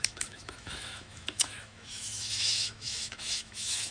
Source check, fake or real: fake